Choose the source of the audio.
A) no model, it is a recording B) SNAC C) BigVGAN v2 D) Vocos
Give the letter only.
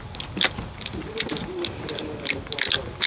A